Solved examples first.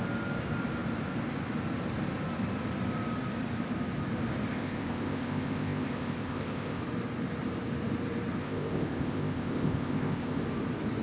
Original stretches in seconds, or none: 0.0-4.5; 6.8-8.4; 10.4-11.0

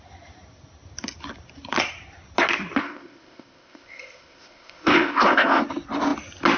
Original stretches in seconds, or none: 0.0-2.8; 5.6-6.6

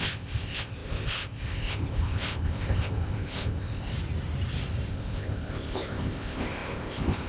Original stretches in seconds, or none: 3.9-4.9

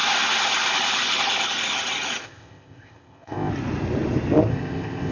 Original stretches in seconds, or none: 0.0-2.2; 3.5-4.5

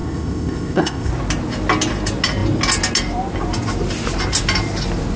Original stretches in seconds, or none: 1.1-5.2

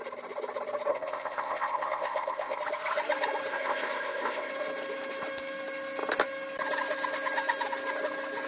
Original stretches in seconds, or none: 0.0-0.9; 2.6-3.5; 4.5-8.5

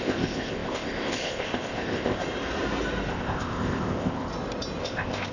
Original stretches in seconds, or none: 2.2-3.1; 4.3-4.8